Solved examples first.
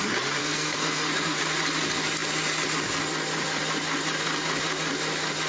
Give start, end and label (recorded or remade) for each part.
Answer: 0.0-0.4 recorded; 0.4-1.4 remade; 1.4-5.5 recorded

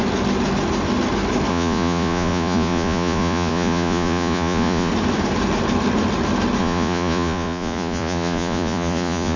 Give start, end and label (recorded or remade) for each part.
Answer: 0.0-1.5 recorded; 1.5-4.9 remade; 4.9-6.6 recorded; 6.6-9.4 remade

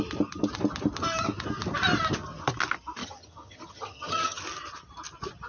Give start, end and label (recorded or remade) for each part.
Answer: 0.0-3.0 recorded; 3.0-4.4 remade; 4.4-5.5 recorded